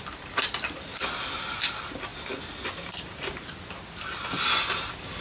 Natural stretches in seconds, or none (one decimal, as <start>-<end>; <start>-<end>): 0.0-5.2